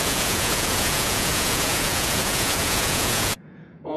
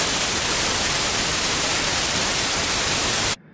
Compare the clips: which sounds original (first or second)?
second